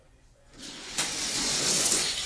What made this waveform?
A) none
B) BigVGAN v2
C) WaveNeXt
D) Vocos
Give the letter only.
D